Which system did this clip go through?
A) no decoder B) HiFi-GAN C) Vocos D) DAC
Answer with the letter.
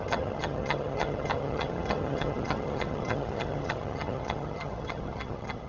B